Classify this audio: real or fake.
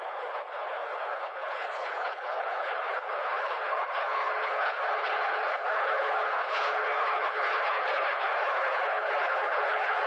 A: fake